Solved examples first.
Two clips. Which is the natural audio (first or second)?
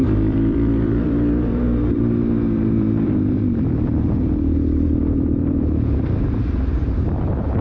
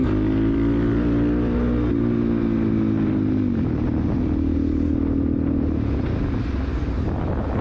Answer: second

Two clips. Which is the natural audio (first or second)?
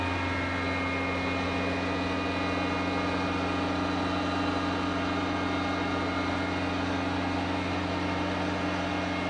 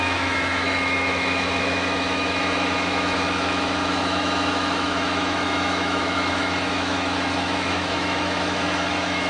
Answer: first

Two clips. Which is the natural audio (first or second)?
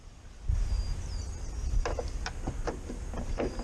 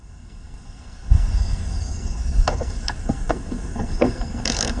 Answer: first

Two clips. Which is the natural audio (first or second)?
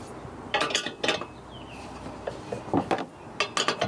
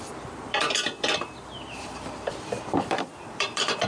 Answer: first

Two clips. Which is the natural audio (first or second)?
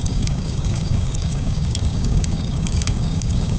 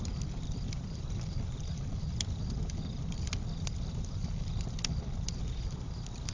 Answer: second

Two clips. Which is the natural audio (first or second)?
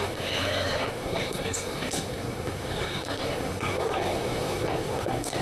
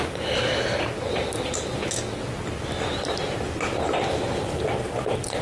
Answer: second